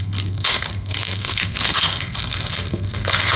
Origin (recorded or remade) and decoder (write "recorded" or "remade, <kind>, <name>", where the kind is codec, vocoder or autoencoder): remade, codec, SNAC